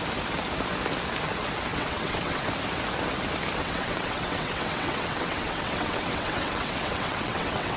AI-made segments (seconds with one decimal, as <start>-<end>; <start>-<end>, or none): 1.7-2.5; 3.6-7.8